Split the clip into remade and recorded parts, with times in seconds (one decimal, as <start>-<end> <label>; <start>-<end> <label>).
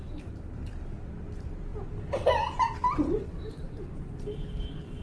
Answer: 0.0-5.0 recorded